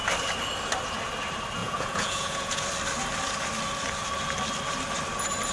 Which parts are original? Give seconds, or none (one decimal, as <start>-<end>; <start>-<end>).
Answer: 0.0-1.6; 2.6-5.5